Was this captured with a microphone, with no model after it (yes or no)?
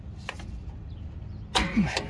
yes